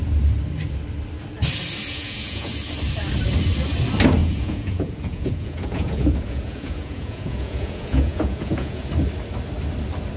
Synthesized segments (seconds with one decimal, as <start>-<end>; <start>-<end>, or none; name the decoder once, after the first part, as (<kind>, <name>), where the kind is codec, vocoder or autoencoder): 1.9-2.5 (vocoder, Vocos); 4.2-8.9

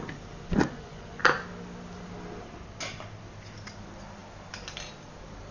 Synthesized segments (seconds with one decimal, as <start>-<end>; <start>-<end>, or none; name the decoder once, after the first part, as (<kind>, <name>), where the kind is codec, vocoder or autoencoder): 0.6-1.2 (vocoder, Vocos)

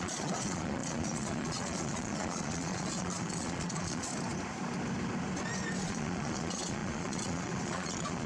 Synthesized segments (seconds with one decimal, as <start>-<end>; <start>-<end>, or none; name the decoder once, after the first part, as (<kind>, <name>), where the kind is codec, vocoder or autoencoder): 0.0-4.1 (vocoder, Vocos); 5.8-8.3

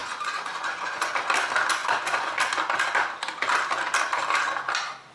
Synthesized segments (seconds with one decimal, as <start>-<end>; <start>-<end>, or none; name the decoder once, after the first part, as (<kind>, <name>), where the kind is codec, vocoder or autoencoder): 0.0-1.1 (vocoder, Vocos); 1.8-2.4

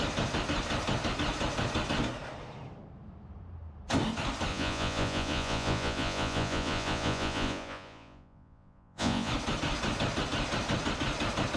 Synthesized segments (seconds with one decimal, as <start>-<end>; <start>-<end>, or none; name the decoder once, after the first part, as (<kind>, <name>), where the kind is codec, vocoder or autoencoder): 4.5-9.3 (vocoder, Vocos)